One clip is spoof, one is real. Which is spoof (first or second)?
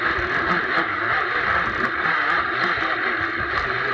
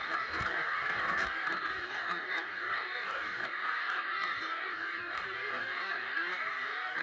second